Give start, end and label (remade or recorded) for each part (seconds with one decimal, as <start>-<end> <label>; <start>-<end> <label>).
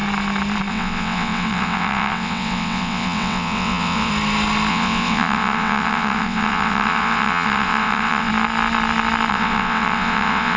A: 0.0-0.7 recorded; 0.7-4.1 remade; 4.1-4.7 recorded; 4.7-8.3 remade; 8.3-9.3 recorded; 9.3-10.6 remade